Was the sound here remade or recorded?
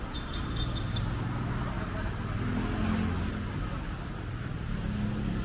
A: recorded